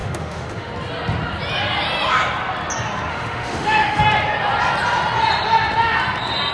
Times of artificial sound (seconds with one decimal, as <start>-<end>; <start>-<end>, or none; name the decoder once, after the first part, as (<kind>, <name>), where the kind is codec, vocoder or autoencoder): 0.0-0.7 (autoencoder, DAC-VAE); 3.1-4.0